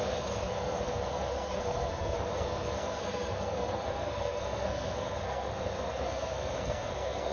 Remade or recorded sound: remade